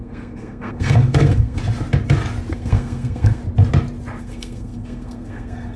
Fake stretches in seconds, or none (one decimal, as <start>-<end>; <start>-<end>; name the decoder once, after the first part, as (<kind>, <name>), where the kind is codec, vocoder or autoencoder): 0.0-1.6 (codec, SNAC); 2.5-3.4; 4.2-5.8

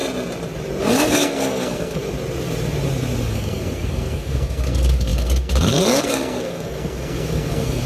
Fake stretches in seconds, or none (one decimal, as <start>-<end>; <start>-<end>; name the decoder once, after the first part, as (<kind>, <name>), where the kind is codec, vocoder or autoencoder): 0.8-2.0 (codec, SNAC); 3.3-7.9

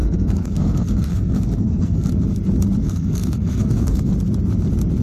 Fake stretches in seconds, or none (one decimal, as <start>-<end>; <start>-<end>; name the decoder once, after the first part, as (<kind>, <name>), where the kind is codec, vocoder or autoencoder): 0.0-2.1 (codec, SNAC); 2.8-4.1